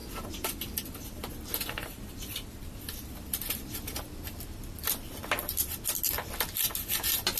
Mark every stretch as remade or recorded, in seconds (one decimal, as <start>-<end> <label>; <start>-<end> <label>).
0.0-7.4 recorded